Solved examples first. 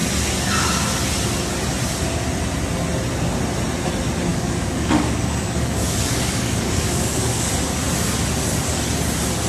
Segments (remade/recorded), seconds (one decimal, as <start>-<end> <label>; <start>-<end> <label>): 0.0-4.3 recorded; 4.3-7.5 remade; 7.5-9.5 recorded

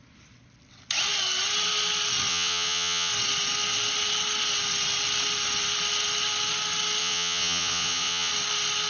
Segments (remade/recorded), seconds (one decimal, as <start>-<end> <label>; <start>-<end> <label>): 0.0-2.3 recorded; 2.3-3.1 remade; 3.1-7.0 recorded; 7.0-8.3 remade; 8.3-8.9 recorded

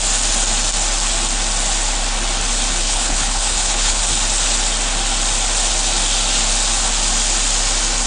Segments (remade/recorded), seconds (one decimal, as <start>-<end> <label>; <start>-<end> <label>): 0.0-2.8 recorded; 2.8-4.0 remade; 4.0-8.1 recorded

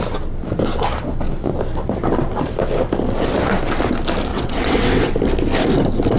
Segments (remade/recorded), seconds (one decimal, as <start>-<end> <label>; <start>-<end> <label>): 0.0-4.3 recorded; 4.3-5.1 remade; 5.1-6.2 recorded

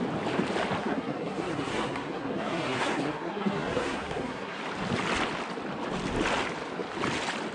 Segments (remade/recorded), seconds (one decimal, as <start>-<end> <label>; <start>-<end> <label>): 0.0-0.8 recorded; 0.8-4.6 remade; 4.6-7.5 recorded

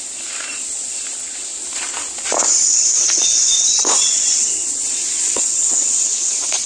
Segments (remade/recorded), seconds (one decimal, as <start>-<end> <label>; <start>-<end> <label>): 0.0-2.7 recorded; 2.7-6.7 remade

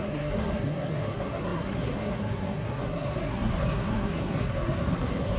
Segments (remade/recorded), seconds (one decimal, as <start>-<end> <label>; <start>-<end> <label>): 0.0-5.4 remade